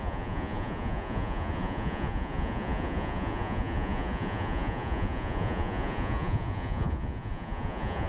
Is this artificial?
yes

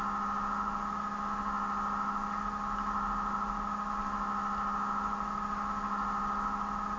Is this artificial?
no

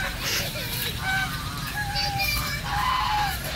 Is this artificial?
yes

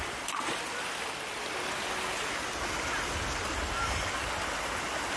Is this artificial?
no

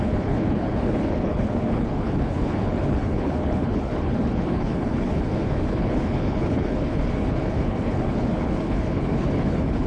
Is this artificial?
yes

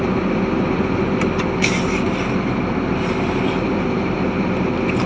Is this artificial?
no